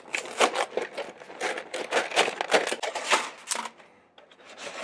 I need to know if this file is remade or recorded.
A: recorded